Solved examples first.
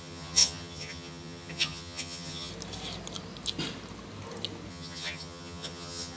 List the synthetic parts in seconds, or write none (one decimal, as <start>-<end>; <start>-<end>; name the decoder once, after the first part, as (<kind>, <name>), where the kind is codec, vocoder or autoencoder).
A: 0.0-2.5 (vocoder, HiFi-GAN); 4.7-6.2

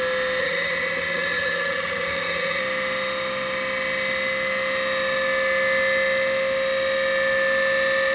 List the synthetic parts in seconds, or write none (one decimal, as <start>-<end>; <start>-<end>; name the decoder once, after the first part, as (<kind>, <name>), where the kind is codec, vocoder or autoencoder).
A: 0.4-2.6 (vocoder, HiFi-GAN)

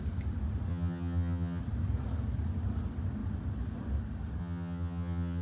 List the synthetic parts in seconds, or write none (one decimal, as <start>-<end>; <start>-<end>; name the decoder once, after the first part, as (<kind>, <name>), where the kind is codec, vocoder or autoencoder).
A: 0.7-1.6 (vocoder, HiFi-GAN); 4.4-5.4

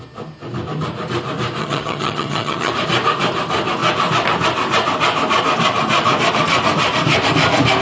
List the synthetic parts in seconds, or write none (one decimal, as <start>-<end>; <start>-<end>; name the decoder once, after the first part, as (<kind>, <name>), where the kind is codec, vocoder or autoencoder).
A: 1.6-2.7 (vocoder, HiFi-GAN)

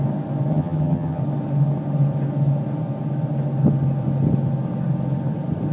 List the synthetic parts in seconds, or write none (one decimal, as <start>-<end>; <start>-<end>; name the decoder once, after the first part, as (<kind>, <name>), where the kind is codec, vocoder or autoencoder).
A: 0.5-1.2 (vocoder, HiFi-GAN)